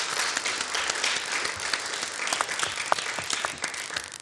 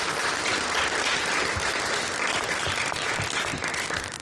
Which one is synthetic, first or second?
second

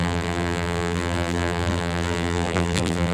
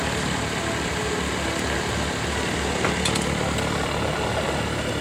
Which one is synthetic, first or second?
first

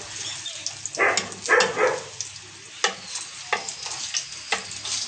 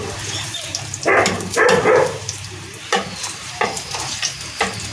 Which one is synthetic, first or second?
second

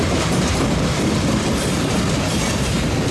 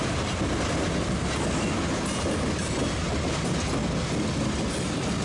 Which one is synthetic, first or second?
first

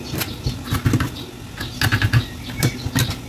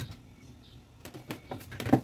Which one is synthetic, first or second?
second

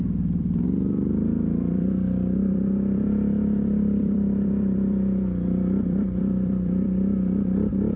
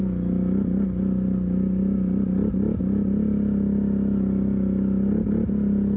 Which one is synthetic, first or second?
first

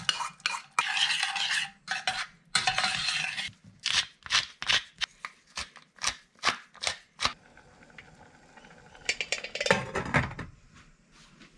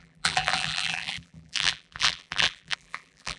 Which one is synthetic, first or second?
second